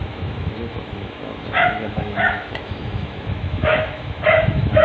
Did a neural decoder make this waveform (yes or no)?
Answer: yes